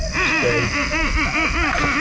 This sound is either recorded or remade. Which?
recorded